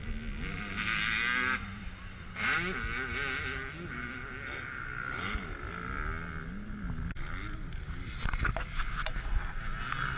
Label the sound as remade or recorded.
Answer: recorded